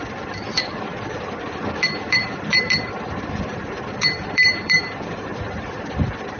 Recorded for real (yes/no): no